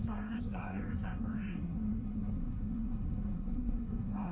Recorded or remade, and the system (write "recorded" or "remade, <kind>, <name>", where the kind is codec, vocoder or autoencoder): remade, codec, SNAC